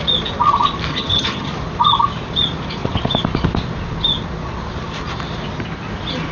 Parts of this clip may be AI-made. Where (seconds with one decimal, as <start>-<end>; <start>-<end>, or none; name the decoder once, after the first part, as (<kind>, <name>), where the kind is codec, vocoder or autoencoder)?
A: 0.9-1.5 (vocoder, HiFi-GAN)

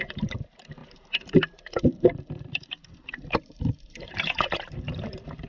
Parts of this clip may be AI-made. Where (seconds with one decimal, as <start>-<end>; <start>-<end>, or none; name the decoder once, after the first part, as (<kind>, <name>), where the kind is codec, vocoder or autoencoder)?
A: 0.0-5.5 (vocoder, BigVGAN v2)

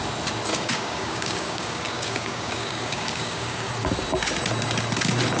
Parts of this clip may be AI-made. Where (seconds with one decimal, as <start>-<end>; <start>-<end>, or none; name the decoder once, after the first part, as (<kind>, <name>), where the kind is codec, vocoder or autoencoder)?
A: 0.5-3.7 (codec, DAC)

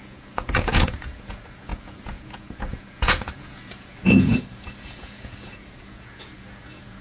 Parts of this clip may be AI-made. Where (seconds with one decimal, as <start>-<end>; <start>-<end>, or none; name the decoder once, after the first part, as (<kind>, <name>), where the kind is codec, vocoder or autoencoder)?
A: 0.0-7.0 (vocoder, Vocos)